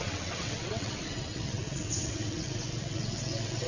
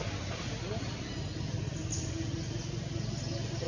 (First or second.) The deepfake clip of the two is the first